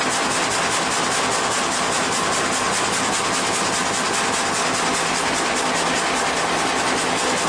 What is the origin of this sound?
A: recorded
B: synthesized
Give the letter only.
A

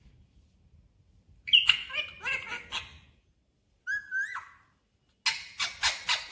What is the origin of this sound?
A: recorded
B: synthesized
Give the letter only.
A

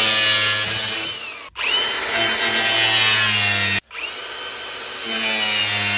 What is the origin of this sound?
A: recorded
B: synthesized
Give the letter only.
A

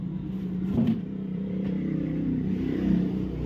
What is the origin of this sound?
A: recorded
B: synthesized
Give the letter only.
B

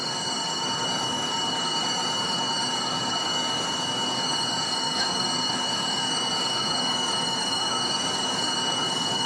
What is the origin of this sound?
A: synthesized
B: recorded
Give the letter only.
A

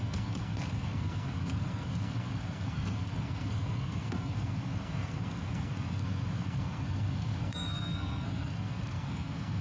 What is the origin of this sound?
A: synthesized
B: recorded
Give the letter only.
A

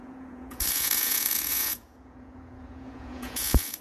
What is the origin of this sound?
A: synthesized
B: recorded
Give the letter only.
A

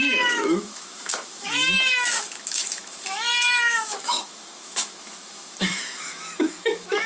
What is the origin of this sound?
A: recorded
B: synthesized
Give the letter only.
B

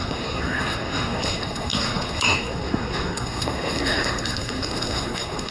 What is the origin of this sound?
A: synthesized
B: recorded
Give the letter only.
A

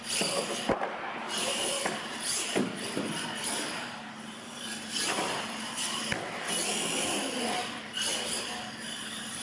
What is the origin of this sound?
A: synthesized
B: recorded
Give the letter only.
B